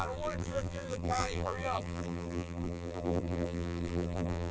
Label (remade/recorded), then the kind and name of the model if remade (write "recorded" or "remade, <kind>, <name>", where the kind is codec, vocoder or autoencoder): remade, vocoder, BigVGAN v2